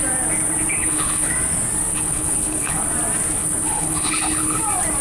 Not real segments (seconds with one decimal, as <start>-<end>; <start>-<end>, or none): 0.8-1.3; 1.9-2.9; 3.4-4.6